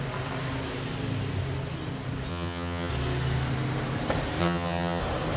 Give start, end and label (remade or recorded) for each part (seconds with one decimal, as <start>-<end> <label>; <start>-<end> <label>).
0.0-2.3 recorded; 2.3-2.9 remade; 2.9-4.4 recorded; 4.4-5.0 remade; 5.0-5.4 recorded